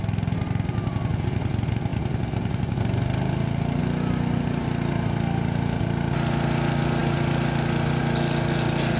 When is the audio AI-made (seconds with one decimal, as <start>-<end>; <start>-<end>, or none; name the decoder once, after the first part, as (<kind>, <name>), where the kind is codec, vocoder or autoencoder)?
none